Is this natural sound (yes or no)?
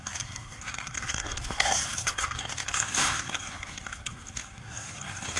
no